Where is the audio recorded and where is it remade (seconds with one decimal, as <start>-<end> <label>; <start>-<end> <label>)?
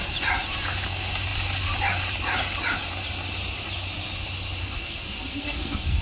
0.0-4.6 recorded; 4.6-6.0 remade